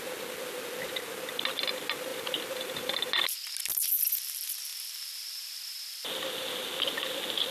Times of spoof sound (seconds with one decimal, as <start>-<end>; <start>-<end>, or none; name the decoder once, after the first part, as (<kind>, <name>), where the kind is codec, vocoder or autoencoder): none